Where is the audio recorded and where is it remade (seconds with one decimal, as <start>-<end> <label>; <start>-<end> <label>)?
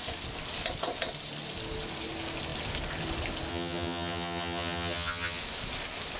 0.0-3.5 recorded; 3.5-5.4 remade; 5.4-6.2 recorded